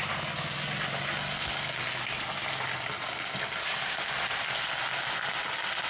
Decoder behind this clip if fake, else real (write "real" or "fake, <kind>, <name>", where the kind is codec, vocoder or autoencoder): real